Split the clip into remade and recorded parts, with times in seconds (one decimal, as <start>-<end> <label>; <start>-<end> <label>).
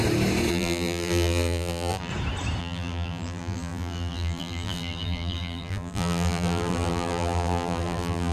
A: 0.0-0.5 recorded; 0.5-2.1 remade; 2.1-2.6 recorded; 2.6-8.3 remade